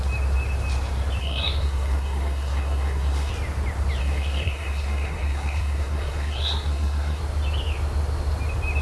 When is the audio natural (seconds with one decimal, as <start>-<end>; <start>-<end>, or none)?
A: 0.0-1.2; 3.3-4.0; 7.2-8.8